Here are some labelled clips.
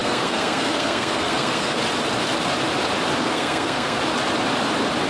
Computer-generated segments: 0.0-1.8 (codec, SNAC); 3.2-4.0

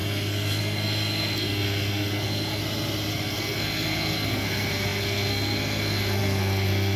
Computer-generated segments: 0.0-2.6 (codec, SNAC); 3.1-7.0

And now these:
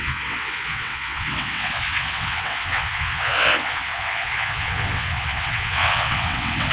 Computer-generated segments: 0.0-6.7 (vocoder, WaveNeXt)

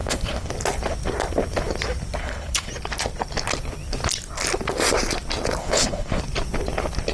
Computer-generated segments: 0.0-0.5 (codec, HILCodec); 2.2-2.7; 5.6-6.2

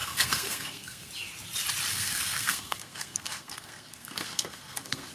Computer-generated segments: 0.0-1.1 (codec, SNAC); 1.9-5.1

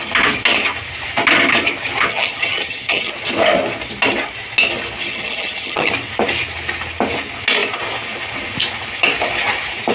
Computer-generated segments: 2.1-3.1 (vocoder, HiFi-GAN); 5.0-5.9

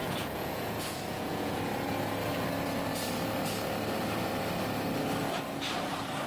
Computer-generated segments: 0.0-1.6 (vocoder, Vocos)

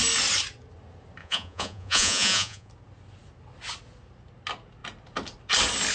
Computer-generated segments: 1.2-2.7 (vocoder, Vocos)